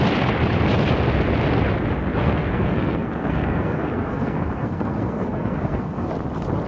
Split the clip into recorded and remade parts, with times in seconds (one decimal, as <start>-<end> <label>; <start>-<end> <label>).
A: 0.0-2.1 recorded; 2.1-6.1 remade; 6.1-6.7 recorded